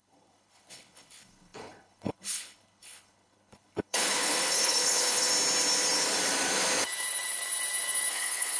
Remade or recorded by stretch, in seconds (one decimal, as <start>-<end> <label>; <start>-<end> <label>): 0.0-5.3 remade; 5.3-8.1 recorded; 8.1-8.6 remade